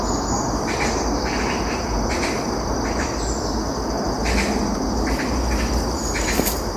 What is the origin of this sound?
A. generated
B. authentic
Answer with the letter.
B